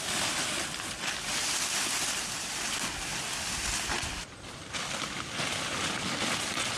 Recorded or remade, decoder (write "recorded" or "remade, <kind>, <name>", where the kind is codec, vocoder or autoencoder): recorded